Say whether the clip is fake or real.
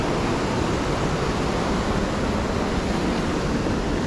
real